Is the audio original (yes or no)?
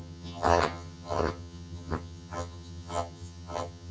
no